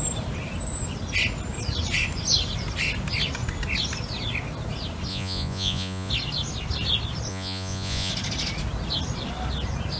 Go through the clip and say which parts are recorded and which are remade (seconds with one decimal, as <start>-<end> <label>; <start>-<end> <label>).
0.0-5.1 recorded; 5.1-6.1 remade; 6.1-7.3 recorded; 7.3-8.1 remade; 8.1-10.0 recorded